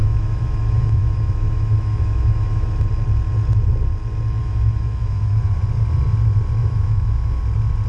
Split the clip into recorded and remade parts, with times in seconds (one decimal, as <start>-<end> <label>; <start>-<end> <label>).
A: 0.0-2.9 remade; 2.9-4.4 recorded; 4.4-5.6 remade; 5.6-6.6 recorded; 6.6-7.4 remade; 7.4-7.9 recorded